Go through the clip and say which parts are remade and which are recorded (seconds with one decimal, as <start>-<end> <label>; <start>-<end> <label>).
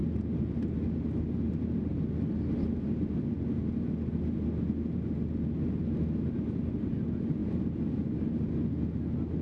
0.0-7.4 recorded; 7.4-8.2 remade; 8.2-9.4 recorded